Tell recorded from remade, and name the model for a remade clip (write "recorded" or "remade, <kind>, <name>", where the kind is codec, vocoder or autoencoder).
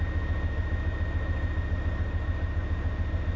recorded